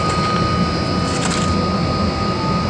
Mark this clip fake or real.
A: real